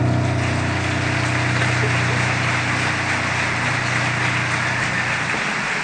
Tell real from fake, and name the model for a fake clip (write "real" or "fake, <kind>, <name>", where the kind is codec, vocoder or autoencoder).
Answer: real